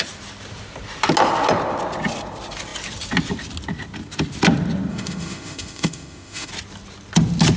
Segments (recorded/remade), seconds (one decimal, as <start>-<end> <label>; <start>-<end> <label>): 0.0-4.9 recorded; 4.9-6.5 remade; 6.5-7.6 recorded